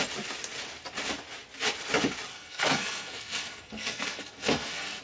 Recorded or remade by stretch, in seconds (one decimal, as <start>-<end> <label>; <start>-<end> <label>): 0.0-2.3 recorded; 2.3-5.0 remade